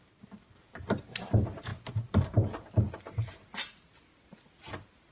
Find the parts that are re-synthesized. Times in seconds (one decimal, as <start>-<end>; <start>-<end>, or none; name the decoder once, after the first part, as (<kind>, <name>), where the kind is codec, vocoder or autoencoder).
none